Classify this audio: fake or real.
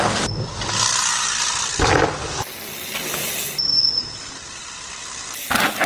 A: real